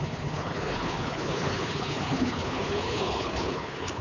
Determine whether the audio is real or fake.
fake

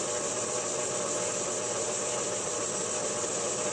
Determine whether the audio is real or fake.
real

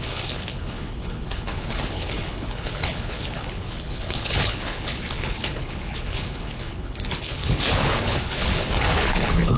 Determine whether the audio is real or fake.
fake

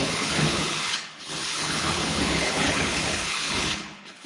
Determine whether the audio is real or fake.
fake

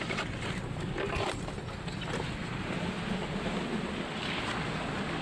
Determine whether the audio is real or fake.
real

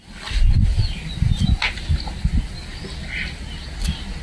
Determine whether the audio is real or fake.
real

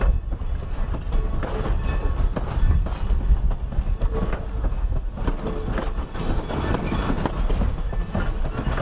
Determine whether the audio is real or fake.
real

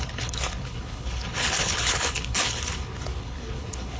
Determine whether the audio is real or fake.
fake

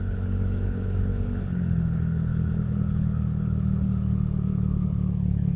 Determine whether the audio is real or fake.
fake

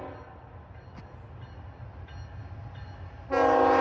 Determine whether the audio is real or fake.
real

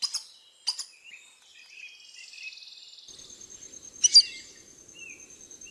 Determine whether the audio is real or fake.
real